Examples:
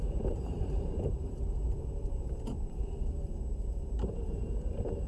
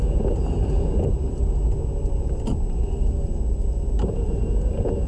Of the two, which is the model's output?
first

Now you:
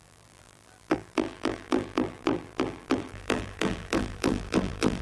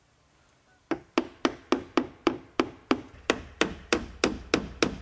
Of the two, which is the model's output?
first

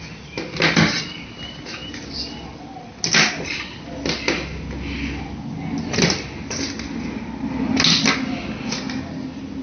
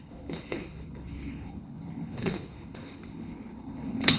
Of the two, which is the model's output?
second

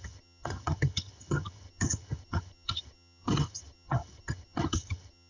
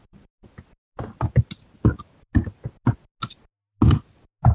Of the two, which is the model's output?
first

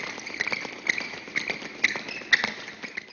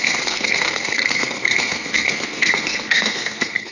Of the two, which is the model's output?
second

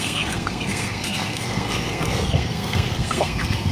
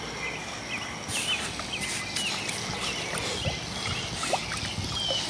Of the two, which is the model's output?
first